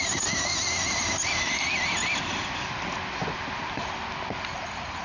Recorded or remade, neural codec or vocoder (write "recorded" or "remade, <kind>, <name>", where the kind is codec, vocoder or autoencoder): recorded